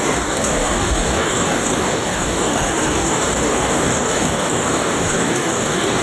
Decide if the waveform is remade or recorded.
remade